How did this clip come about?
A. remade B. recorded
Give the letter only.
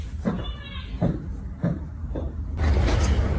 B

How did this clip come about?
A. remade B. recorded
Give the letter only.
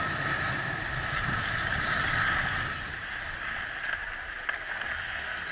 B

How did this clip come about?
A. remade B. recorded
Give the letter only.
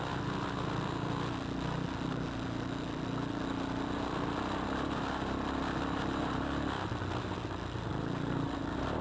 B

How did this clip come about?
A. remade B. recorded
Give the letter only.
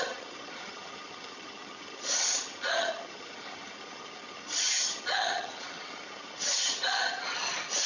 A